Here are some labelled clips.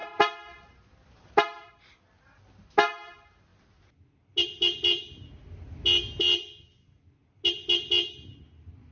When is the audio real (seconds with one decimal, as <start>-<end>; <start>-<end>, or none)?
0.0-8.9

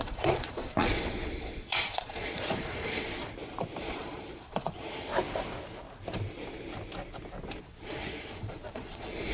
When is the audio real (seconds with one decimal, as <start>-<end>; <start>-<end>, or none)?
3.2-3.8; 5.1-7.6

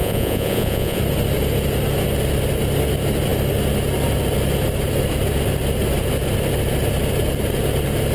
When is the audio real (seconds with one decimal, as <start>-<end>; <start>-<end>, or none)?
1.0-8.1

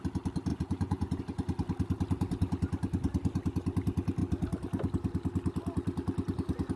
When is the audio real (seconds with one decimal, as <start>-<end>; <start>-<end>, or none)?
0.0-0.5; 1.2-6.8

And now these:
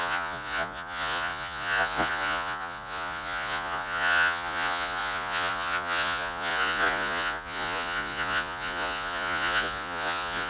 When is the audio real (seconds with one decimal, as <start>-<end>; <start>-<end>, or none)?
none

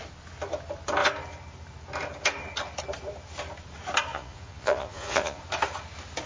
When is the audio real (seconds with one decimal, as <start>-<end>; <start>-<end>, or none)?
0.0-4.1; 5.4-6.3

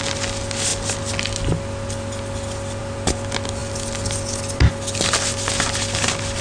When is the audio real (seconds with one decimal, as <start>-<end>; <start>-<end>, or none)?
0.0-6.4

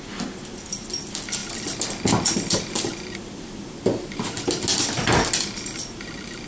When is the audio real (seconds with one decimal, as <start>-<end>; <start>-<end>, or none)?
0.0-6.5